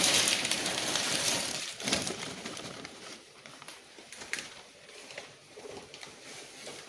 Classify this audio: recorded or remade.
remade